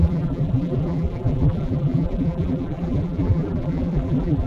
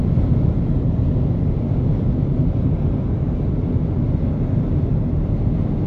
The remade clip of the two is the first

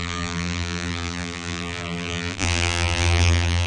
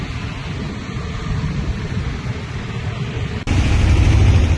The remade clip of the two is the first